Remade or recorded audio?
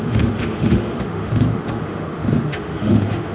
remade